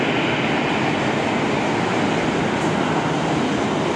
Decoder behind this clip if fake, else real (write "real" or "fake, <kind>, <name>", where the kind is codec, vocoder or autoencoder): real